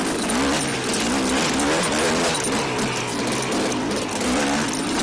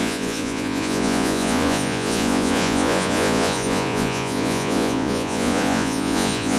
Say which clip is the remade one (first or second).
second